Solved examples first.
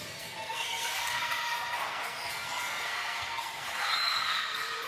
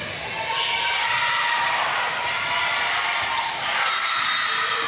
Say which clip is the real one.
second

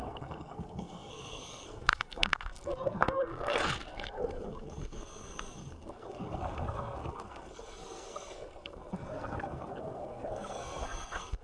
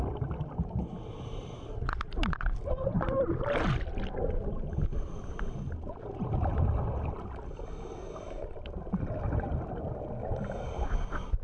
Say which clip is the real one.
second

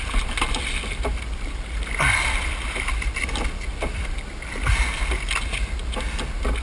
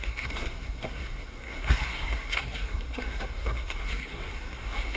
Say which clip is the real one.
first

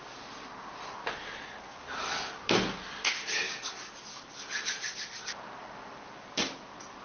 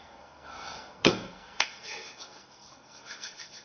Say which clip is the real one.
first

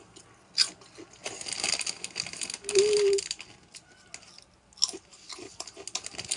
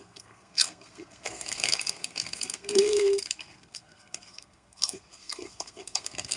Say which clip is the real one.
first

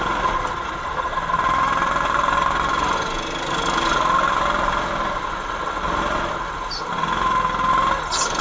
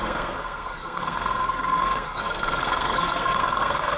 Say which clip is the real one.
first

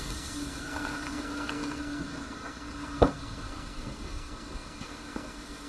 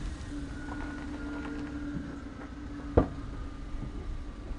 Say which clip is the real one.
second